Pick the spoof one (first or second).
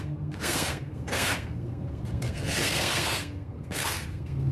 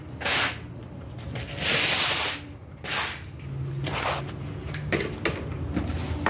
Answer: first